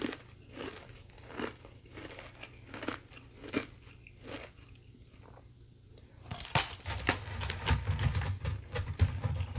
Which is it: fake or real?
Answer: real